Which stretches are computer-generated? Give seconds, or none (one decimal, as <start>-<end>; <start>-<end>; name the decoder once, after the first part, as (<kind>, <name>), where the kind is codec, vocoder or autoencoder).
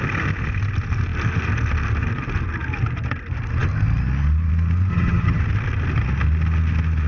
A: 4.9-5.4 (vocoder, HiFi-GAN)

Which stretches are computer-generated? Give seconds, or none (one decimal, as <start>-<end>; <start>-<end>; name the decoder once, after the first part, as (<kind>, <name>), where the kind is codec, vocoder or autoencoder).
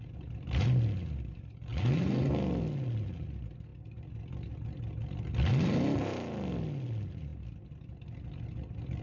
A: none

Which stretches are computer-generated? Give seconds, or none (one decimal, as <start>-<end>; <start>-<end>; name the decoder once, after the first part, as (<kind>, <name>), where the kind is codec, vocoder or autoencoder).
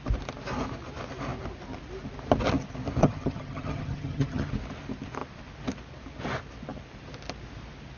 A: 3.0-4.5 (vocoder, HiFi-GAN)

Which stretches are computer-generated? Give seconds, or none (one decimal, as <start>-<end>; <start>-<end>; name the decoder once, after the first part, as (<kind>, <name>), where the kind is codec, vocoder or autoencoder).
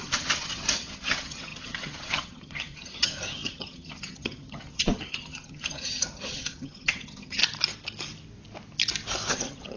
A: 0.0-7.4 (vocoder, HiFi-GAN); 9.3-9.8